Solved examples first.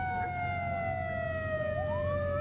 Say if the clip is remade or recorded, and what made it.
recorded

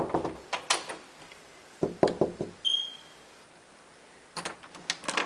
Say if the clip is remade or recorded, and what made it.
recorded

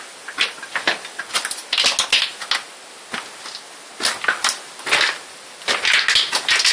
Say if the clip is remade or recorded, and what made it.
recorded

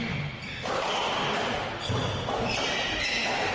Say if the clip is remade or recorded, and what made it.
recorded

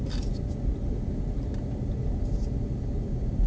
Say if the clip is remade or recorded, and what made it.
recorded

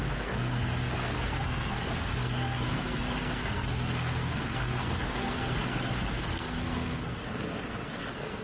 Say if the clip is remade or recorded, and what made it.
remade, codec, SNAC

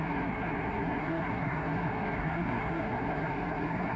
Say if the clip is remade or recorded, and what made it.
remade, codec, SNAC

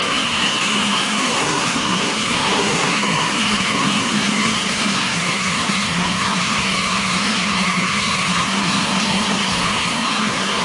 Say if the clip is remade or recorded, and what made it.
remade, codec, SNAC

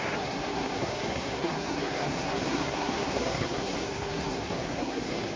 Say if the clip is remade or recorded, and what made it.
remade, codec, SNAC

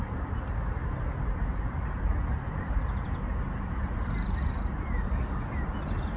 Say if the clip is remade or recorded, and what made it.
recorded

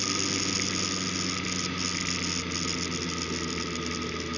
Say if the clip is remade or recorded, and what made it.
recorded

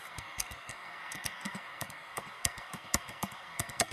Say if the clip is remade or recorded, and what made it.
remade, codec, SNAC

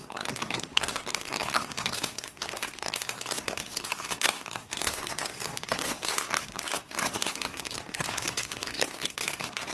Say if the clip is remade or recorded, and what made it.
remade, codec, SNAC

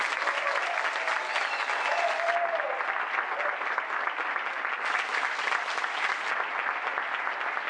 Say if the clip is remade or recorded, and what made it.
recorded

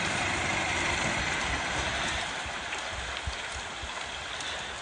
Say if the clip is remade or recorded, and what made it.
recorded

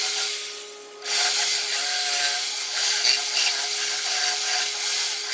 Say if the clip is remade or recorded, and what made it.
recorded